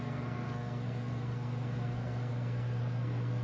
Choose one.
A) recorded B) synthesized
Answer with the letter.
B